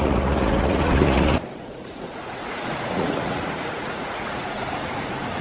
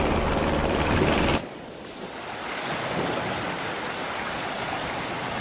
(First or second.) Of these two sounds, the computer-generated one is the first